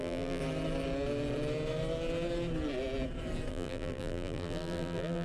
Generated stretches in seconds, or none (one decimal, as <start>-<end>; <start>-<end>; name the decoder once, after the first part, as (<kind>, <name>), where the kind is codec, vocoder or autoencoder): 0.0-0.4 (vocoder, BigVGAN v2); 3.5-5.2